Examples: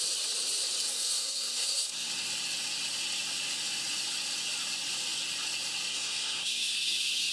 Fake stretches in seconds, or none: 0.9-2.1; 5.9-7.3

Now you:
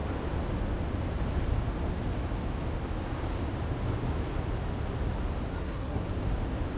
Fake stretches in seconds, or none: 5.5-6.0

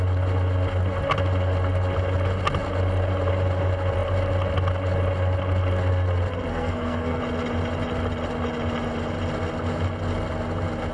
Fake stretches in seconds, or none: 6.5-7.2

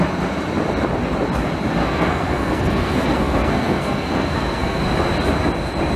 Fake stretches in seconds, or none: 1.8-4.8

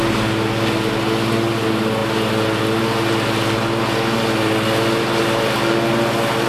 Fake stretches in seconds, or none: none